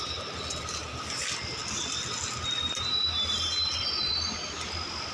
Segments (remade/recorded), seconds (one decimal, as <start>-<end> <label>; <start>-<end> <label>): 0.0-5.1 recorded